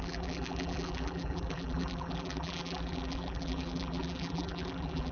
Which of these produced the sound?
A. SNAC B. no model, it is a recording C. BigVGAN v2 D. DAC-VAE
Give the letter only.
C